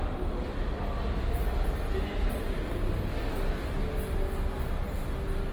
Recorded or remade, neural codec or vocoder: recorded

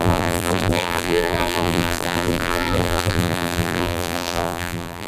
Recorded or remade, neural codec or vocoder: remade, vocoder, BigVGAN v2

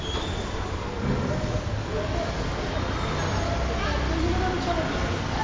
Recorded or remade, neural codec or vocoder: recorded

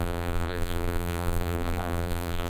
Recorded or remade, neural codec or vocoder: remade, vocoder, BigVGAN v2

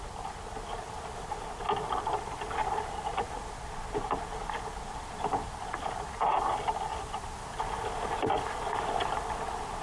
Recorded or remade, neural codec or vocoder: recorded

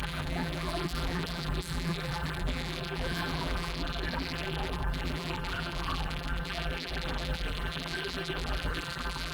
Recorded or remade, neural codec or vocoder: remade, vocoder, BigVGAN v2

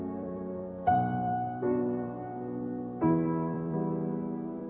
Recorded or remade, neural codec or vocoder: remade, vocoder, BigVGAN v2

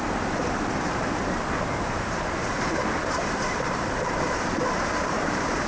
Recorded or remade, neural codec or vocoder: remade, vocoder, BigVGAN v2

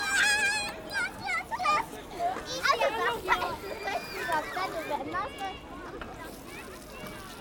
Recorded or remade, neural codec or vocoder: recorded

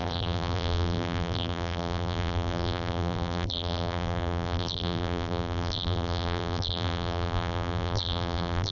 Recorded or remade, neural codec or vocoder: remade, vocoder, BigVGAN v2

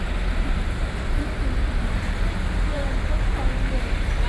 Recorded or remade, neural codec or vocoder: remade, vocoder, BigVGAN v2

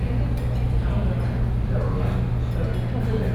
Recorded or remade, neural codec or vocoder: recorded